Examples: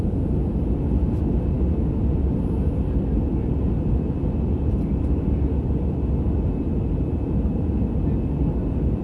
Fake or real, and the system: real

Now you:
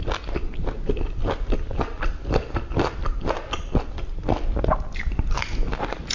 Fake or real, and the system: real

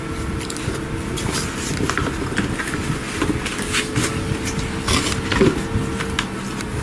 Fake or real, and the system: real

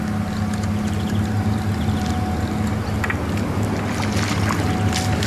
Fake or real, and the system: real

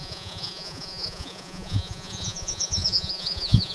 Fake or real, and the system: fake, vocoder, Vocos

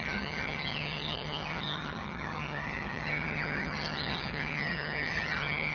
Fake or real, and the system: fake, vocoder, HiFi-GAN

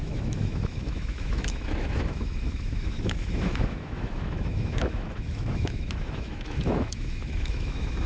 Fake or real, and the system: fake, autoencoder, DAC-VAE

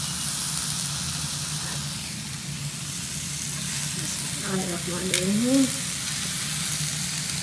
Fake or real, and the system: real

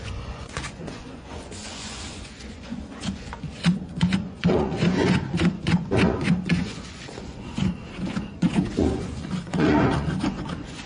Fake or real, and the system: fake, vocoder, Vocos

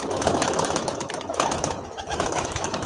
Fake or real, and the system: fake, autoencoder, DAC-VAE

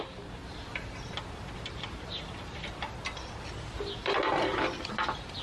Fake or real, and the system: real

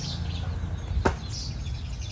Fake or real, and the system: real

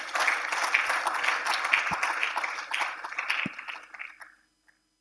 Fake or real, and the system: real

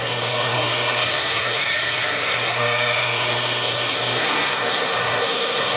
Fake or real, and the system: fake, codec, SNAC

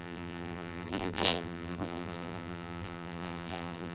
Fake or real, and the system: fake, vocoder, BigVGAN v2